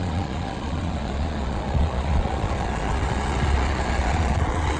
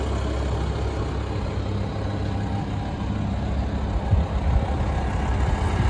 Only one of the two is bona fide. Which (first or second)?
second